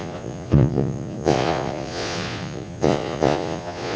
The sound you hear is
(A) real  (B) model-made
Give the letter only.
B